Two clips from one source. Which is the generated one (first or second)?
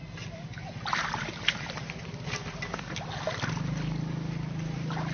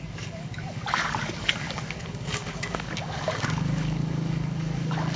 second